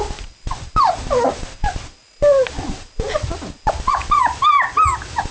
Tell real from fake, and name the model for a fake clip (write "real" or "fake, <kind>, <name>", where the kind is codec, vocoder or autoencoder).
real